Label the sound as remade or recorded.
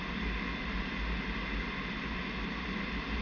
remade